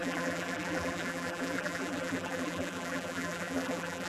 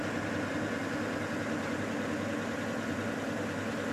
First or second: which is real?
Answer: second